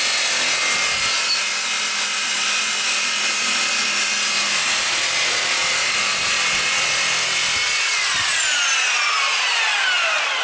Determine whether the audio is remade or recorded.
recorded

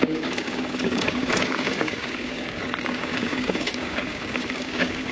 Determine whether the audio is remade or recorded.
remade